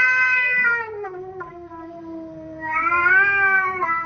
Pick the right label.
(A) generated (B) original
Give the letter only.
A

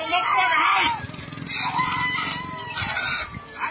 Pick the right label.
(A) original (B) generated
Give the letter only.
A